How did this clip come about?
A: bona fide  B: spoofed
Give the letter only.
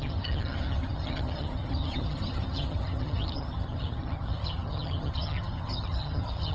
B